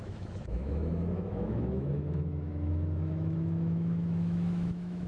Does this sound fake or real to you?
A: fake